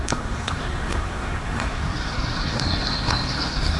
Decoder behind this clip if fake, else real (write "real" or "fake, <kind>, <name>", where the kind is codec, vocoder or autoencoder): fake, codec, SNAC